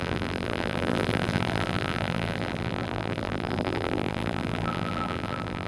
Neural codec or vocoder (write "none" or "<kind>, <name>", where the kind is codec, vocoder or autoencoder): vocoder, BigVGAN v2